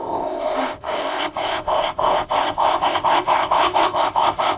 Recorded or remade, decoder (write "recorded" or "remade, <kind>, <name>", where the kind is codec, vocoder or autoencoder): remade, codec, ZipCodec